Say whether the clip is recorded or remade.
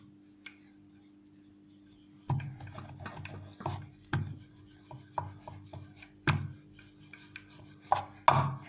recorded